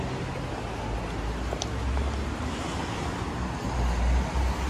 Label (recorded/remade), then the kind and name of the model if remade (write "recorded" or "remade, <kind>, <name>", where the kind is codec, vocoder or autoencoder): recorded